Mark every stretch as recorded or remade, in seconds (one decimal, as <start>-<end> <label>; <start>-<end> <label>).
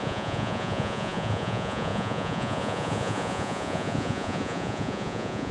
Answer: 0.0-5.5 remade